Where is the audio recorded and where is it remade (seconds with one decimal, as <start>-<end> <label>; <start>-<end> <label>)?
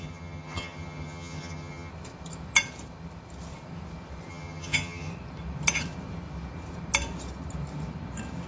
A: 0.0-1.9 remade; 1.9-4.3 recorded; 4.3-5.1 remade; 5.1-8.5 recorded